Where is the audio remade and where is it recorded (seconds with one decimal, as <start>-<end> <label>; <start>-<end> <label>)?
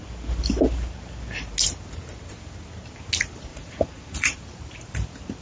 0.0-3.5 recorded; 3.5-4.4 remade; 4.4-5.4 recorded